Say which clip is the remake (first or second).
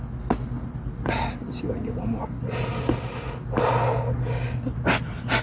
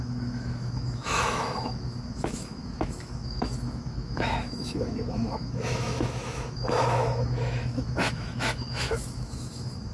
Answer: second